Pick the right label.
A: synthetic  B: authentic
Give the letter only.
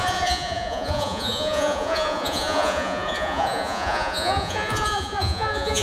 A